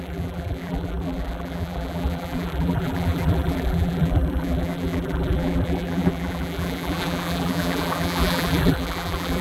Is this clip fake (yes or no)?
yes